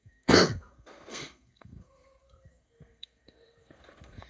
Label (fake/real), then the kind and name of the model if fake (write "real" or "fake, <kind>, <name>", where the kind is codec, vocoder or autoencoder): fake, codec, SNAC